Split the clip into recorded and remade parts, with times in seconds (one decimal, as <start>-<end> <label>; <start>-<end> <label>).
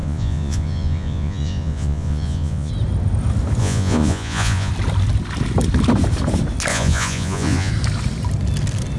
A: 0.0-2.7 remade; 2.7-3.6 recorded; 3.6-4.7 remade; 4.7-6.7 recorded; 6.7-7.7 remade; 7.7-9.0 recorded